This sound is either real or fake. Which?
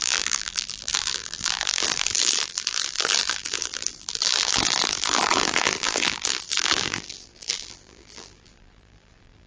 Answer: fake